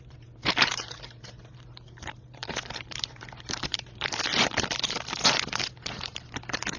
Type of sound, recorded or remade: remade